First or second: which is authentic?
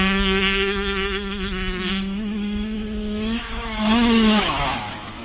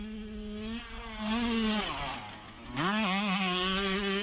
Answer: second